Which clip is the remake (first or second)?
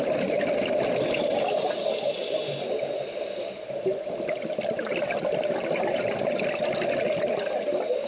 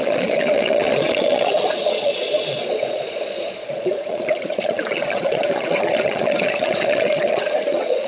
second